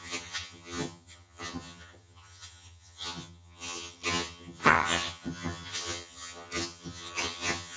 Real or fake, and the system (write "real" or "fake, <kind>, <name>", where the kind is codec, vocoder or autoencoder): fake, vocoder, HiFi-GAN